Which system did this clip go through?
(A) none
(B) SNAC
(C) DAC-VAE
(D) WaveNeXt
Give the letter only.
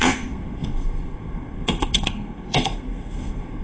B